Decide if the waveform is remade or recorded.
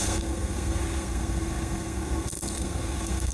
remade